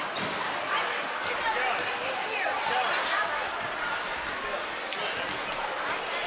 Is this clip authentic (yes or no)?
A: yes